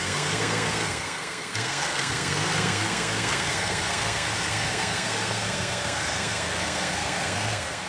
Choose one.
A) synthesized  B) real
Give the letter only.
A